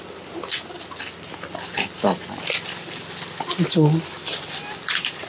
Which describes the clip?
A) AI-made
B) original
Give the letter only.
B